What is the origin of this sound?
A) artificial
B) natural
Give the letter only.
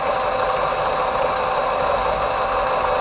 B